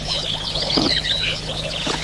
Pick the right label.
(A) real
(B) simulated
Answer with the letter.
B